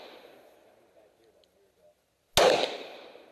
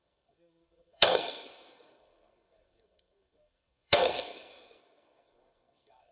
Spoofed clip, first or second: second